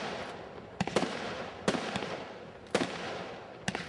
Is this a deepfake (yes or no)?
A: no